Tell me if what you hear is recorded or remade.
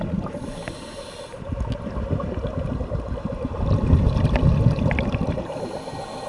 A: recorded